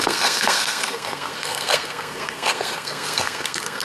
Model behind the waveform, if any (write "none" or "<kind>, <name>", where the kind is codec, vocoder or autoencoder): codec, SNAC